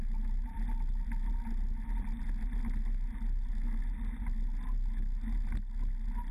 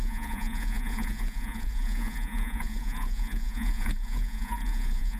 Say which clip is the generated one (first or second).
second